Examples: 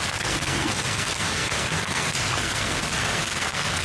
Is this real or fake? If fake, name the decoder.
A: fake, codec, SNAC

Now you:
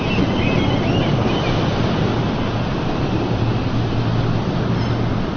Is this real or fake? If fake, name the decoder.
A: real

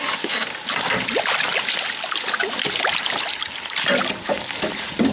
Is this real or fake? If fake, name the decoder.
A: real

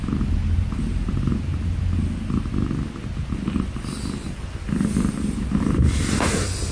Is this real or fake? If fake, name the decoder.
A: real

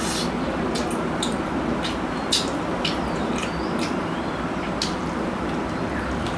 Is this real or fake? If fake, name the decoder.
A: real